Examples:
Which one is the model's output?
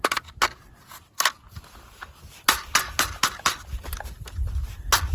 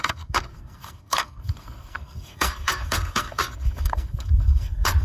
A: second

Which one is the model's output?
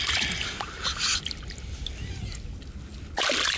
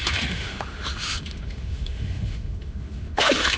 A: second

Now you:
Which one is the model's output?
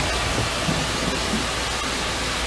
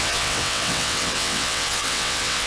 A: second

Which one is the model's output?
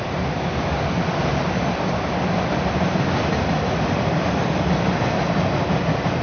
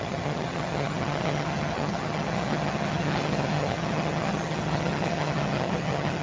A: second